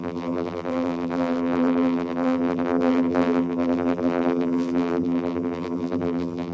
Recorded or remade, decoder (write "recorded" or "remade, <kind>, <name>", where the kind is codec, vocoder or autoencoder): remade, vocoder, BigVGAN v2